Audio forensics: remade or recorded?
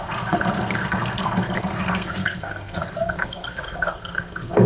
remade